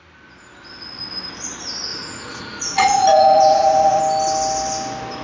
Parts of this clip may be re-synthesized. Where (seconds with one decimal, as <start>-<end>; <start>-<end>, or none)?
1.9-4.0